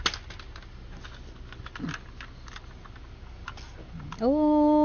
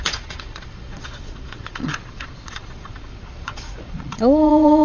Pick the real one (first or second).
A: first